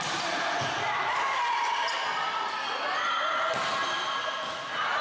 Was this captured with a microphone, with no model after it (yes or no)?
yes